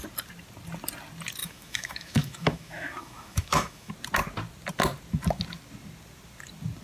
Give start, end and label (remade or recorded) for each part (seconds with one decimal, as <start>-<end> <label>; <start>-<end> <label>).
0.0-1.4 recorded; 1.4-3.9 remade; 3.9-6.8 recorded